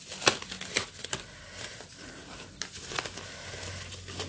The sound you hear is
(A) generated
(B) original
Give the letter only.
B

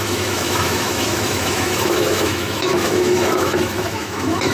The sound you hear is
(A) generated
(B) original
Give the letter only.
A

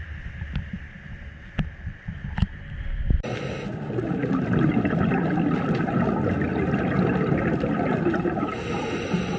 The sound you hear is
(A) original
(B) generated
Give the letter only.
A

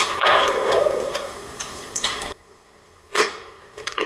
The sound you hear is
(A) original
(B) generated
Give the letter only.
B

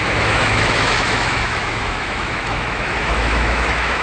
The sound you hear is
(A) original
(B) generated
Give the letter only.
B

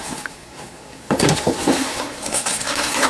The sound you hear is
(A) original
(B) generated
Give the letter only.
B